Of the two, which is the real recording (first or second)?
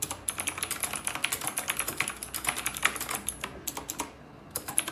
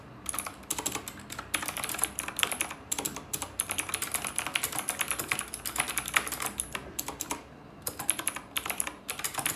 first